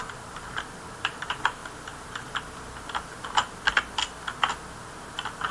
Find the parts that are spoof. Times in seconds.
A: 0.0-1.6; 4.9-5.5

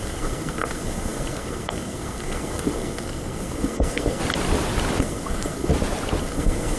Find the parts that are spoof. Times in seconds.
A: 0.0-4.2; 5.0-5.7; 6.2-6.8